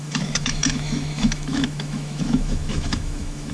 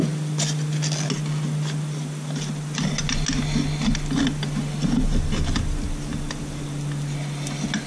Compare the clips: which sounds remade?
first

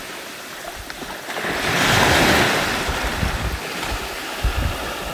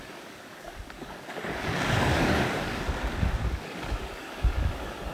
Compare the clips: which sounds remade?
second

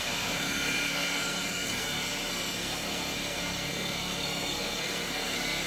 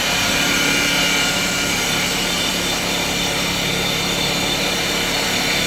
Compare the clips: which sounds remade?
first